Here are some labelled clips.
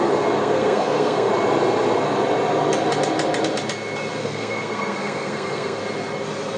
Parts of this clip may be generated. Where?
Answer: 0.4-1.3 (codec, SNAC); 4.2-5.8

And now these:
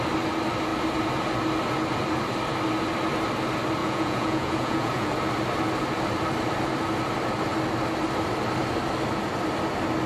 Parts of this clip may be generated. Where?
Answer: 3.8-5.1 (vocoder, Vocos)

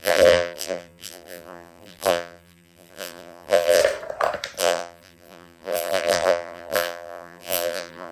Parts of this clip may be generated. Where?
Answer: 0.0-3.8 (vocoder, BigVGAN v2); 4.6-8.1

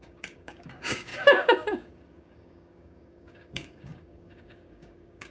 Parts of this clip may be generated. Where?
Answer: 0.0-5.3 (codec, DAC)

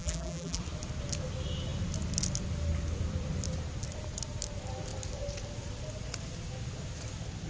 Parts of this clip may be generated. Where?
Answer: 0.0-0.6 (vocoder, BigVGAN v2)

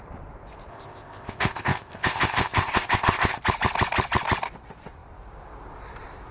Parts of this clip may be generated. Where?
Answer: 0.7-3.4 (codec, ZipCodec)

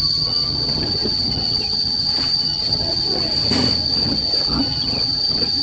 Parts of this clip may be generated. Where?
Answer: 0.0-3.4 (vocoder, HiFi-GAN); 3.9-5.6

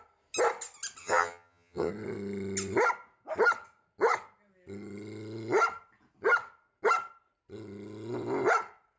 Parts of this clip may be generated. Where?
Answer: 1.0-1.9 (vocoder, HiFi-GAN)